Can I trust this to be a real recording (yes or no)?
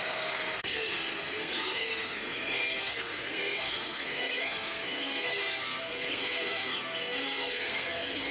no